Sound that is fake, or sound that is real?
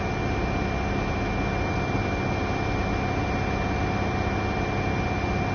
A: real